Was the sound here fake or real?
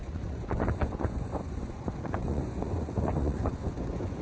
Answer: fake